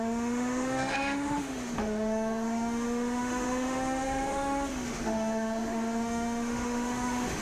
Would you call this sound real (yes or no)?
no